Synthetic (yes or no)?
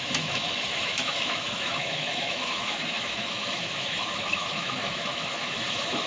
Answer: yes